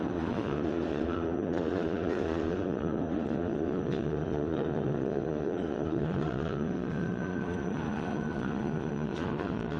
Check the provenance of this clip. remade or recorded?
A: remade